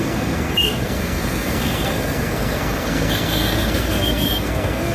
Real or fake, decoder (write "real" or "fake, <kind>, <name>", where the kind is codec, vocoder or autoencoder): fake, codec, SNAC